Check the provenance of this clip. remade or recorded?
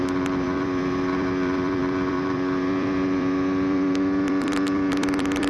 remade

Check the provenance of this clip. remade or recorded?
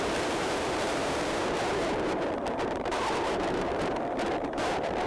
remade